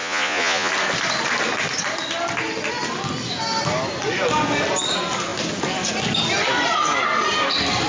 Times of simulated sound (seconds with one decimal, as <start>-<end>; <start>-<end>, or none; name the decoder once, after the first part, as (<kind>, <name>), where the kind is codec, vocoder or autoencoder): 0.0-0.7 (vocoder, Vocos)